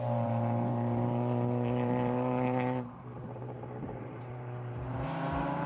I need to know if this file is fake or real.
fake